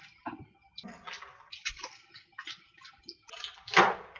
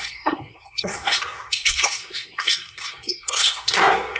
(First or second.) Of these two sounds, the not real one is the second